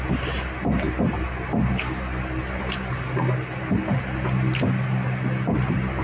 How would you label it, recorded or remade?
recorded